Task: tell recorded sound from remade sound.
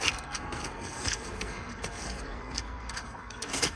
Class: remade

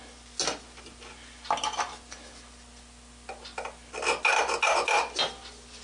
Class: recorded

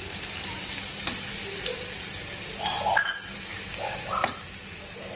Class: recorded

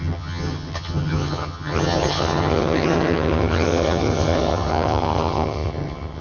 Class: remade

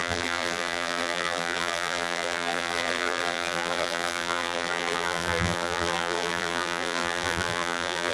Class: remade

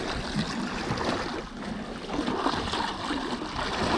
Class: recorded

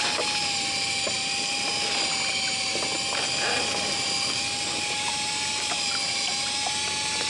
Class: recorded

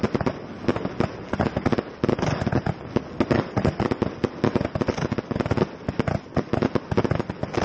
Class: recorded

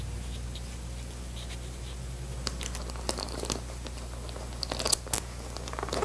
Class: recorded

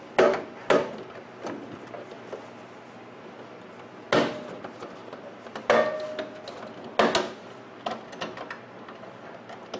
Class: recorded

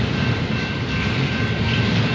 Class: recorded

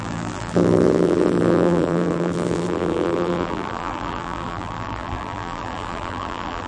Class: remade